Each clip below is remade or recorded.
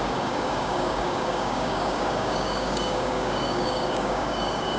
remade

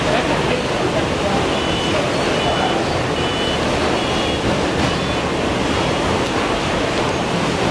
recorded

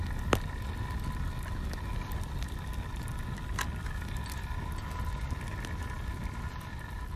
recorded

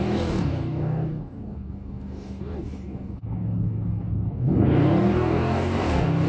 remade